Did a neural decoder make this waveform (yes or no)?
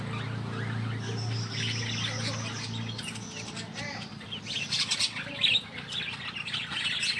no